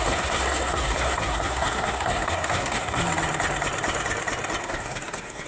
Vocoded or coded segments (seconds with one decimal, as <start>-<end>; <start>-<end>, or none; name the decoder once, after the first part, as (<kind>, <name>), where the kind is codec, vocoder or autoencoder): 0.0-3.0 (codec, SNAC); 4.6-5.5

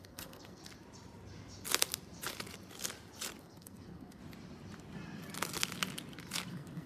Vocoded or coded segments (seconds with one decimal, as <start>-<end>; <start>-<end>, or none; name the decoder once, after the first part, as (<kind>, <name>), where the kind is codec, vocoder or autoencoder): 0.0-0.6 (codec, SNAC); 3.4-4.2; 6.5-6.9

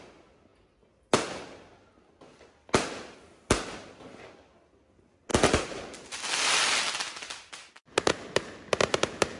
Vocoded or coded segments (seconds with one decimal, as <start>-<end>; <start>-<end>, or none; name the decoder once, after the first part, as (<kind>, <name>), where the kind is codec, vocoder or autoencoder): none

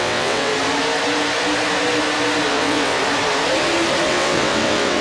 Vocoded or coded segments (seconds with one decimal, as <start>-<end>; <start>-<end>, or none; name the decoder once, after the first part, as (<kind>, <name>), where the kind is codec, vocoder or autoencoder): 0.0-0.5 (vocoder, WaveNeXt); 2.5-3.0; 4.1-5.0

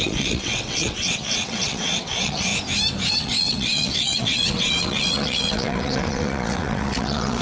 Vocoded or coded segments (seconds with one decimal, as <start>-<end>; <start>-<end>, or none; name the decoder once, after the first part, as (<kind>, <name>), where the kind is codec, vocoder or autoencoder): 0.0-2.5 (vocoder, WaveNeXt); 3.1-7.4

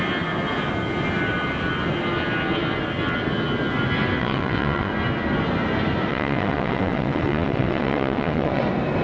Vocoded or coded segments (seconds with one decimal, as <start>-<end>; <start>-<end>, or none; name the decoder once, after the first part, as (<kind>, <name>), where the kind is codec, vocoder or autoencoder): 4.2-4.9 (vocoder, WaveNeXt); 6.1-8.6

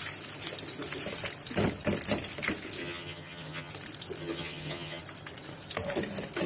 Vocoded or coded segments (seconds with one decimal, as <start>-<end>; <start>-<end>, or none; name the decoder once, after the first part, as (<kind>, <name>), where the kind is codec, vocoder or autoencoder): 2.8-3.7 (vocoder, HiFi-GAN); 4.2-5.0